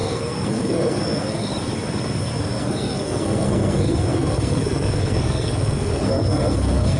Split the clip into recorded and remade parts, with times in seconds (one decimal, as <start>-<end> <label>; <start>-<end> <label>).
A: 0.0-1.5 remade; 1.5-2.4 recorded; 2.4-7.0 remade

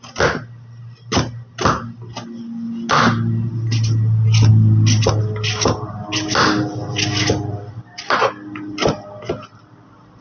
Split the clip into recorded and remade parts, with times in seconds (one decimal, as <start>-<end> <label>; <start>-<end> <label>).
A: 0.0-10.2 recorded

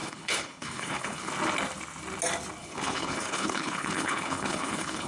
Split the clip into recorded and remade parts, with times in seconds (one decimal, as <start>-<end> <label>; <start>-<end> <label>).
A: 0.0-1.3 remade; 1.3-2.6 recorded; 2.6-5.1 remade

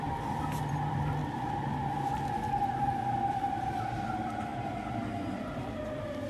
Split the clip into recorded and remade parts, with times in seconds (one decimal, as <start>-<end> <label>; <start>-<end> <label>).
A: 0.0-1.2 remade; 1.2-2.7 recorded; 2.7-4.5 remade; 4.5-5.2 recorded; 5.2-6.3 remade